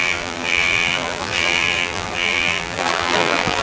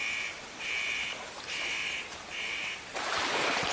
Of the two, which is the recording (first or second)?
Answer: second